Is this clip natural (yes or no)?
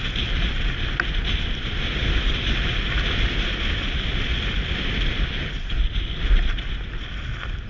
yes